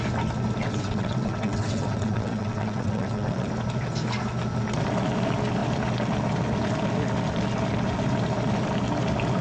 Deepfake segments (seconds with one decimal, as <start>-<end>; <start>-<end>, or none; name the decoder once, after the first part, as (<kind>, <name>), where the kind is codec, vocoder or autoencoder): 0.6-3.5 (vocoder, WaveNeXt)